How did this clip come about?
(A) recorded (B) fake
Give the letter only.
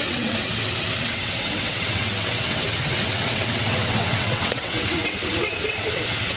B